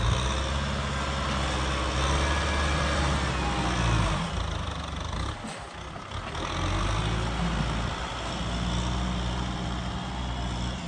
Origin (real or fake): real